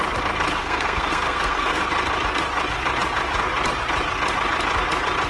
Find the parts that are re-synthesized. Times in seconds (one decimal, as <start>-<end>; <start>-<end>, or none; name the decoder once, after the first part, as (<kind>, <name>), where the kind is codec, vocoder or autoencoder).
0.6-1.8 (codec, SNAC)